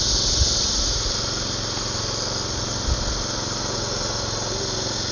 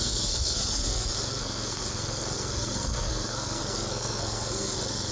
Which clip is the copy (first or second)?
second